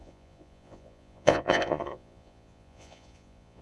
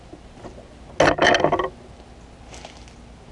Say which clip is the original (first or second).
second